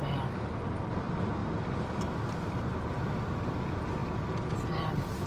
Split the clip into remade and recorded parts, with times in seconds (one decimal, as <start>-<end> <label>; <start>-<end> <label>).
0.0-5.3 recorded